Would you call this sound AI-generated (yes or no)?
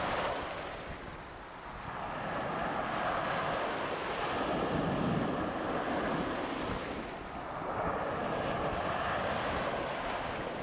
no